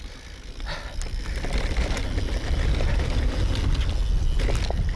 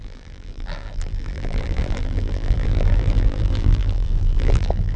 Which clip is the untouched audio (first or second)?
first